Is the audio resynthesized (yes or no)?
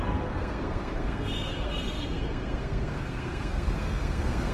yes